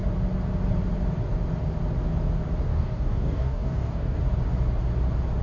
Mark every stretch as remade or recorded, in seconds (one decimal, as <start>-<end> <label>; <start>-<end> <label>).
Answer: 0.0-2.7 recorded; 2.7-4.2 remade; 4.2-5.4 recorded